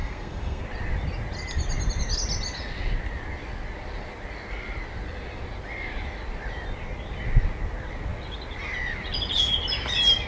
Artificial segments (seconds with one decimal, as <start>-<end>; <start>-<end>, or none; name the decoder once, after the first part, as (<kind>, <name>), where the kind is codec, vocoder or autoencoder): 0.0-0.6 (codec, SNAC)